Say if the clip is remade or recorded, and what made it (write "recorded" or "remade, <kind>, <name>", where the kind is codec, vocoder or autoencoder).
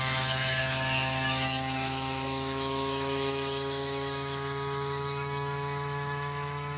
remade, autoencoder, DAC-VAE